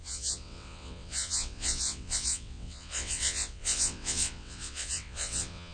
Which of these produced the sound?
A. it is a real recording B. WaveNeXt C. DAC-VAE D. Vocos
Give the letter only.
B